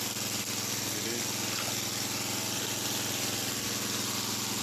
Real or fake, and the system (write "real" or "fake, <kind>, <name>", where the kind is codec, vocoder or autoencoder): real